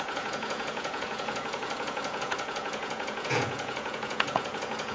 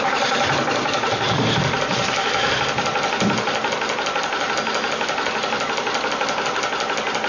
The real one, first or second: second